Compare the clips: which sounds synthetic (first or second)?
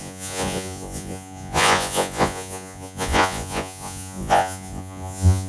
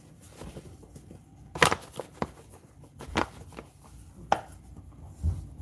first